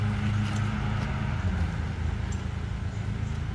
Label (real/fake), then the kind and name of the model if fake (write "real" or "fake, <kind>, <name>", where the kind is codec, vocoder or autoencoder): real